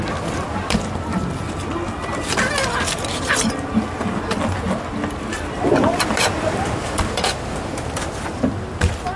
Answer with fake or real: real